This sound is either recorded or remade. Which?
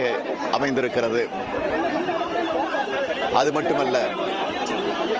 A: remade